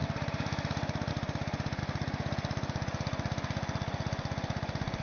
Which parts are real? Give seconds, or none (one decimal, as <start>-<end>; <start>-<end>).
0.0-1.1; 1.8-5.0